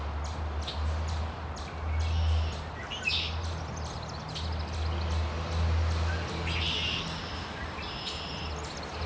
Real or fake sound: real